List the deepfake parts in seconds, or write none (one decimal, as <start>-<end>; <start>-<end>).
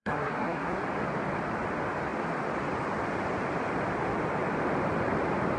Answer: 0.0-0.8